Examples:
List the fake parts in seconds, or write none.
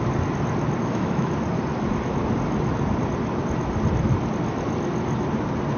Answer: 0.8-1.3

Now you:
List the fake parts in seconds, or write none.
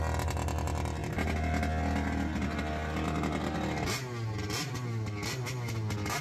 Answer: none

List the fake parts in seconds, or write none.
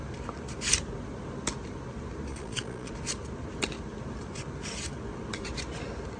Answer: 2.3-2.9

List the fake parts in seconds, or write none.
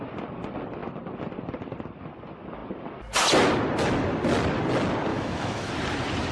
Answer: 5.1-5.7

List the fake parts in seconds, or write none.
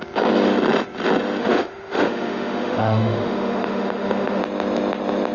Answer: 1.4-4.4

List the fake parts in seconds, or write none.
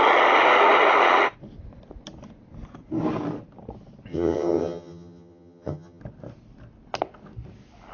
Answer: 4.1-6.0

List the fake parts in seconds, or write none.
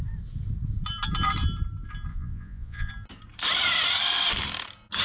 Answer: 2.1-2.9